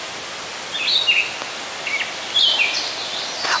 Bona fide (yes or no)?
yes